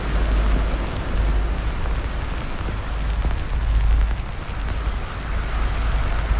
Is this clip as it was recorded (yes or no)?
yes